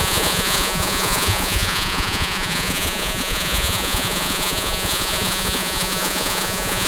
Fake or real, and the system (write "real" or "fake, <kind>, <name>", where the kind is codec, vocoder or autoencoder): fake, vocoder, Vocos